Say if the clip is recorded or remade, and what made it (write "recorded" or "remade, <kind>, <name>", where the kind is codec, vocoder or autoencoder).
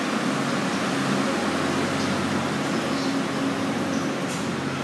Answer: recorded